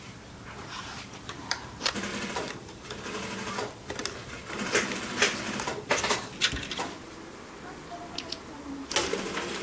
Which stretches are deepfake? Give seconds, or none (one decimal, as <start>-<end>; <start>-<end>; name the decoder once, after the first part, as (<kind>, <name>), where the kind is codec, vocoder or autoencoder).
none

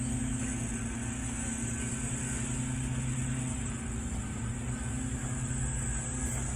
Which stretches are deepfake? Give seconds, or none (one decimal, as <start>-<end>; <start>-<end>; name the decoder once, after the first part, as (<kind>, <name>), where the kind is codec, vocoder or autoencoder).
none